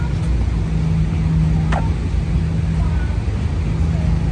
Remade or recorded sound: recorded